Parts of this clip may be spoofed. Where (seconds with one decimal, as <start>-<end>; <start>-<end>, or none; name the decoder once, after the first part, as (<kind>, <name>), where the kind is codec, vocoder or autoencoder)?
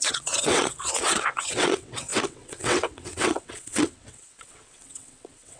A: 0.0-5.6 (vocoder, WaveNeXt)